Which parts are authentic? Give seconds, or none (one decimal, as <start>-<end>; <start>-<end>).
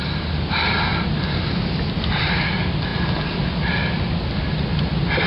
0.0-5.3